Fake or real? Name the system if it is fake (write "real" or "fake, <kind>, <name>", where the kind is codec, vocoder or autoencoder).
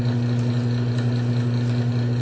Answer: real